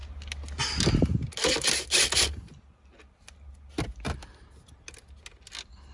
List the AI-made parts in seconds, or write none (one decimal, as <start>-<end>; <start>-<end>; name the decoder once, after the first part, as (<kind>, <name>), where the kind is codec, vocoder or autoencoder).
none